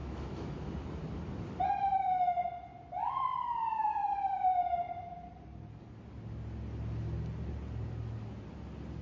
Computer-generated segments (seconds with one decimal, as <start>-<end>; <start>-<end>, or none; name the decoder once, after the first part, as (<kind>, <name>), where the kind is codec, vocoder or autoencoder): 0.0-0.7 (autoencoder, DAC-VAE)

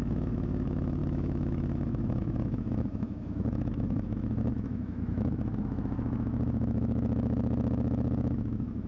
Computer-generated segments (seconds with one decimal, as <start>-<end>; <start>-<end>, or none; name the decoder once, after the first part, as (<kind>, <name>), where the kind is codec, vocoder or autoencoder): 0.0-8.9 (autoencoder, DAC-VAE)